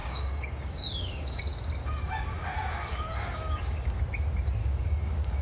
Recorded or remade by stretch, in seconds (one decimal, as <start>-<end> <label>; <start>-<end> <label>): 0.0-1.4 remade; 1.4-1.8 recorded; 1.8-4.0 remade; 4.0-4.6 recorded; 4.6-5.4 remade